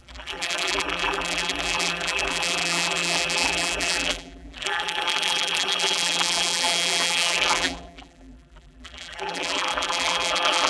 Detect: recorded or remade remade